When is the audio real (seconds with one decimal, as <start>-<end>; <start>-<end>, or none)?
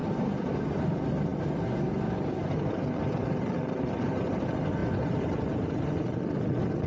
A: 0.5-6.9